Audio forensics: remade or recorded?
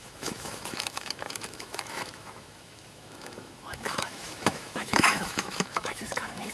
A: remade